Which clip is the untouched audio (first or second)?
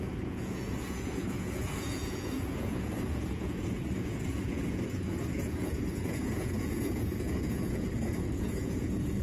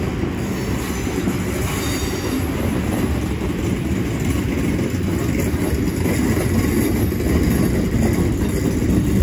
second